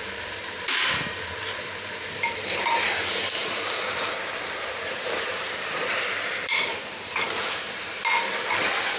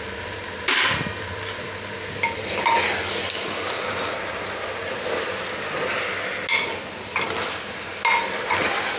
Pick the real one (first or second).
second